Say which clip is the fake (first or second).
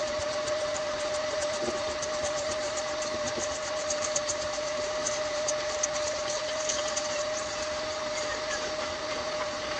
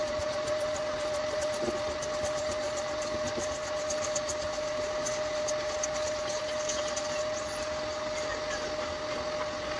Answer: first